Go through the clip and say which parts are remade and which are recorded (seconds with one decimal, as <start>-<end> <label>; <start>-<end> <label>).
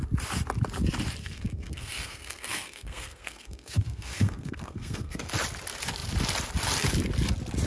0.0-1.2 recorded; 1.2-5.3 remade; 5.3-7.7 recorded